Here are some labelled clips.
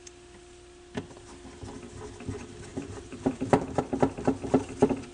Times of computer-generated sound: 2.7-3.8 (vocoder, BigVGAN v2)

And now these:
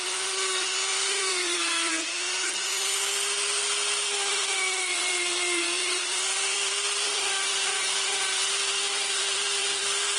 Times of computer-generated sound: 0.9-1.9 (vocoder, BigVGAN v2); 4.9-10.2